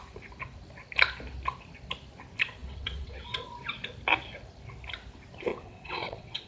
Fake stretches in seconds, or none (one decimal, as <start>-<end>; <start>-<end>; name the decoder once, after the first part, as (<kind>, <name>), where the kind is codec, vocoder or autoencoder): 2.6-3.5 (vocoder, WaveNeXt); 5.5-6.5